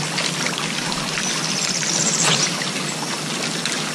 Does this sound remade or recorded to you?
recorded